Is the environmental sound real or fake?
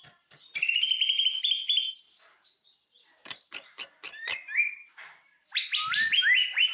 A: fake